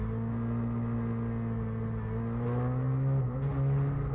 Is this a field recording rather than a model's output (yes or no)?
yes